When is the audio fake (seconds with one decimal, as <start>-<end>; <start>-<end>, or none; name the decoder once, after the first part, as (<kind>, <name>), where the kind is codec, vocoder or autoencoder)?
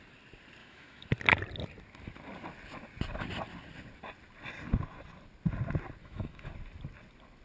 0.6-1.1 (autoencoder, DAC-VAE); 6.0-6.5